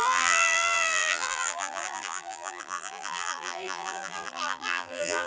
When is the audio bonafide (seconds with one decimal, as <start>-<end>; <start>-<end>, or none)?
none

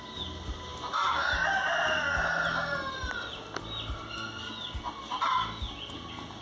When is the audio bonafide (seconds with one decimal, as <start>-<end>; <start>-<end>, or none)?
0.0-6.4